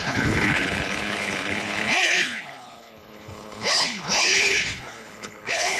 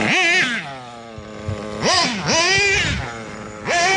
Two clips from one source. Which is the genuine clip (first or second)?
second